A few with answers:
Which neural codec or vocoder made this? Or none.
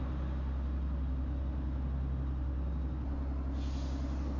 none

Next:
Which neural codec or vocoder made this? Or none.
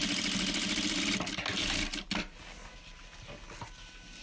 none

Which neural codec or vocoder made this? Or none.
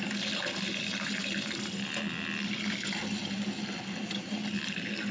none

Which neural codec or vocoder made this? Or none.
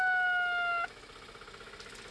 none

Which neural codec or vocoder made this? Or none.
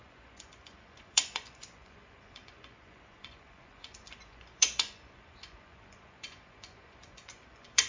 vocoder, Vocos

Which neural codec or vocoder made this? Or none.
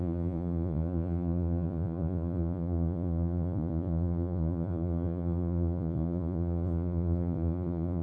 vocoder, Vocos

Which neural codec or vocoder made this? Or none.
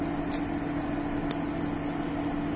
none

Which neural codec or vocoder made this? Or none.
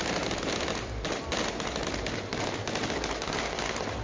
none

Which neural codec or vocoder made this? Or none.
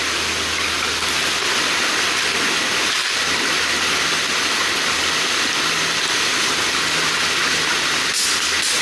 none